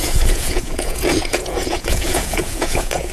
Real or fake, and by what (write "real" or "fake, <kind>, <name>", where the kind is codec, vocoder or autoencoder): fake, vocoder, Vocos